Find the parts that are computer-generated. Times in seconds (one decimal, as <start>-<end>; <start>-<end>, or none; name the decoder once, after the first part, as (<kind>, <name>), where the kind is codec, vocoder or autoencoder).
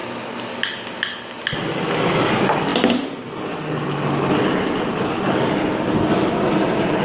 none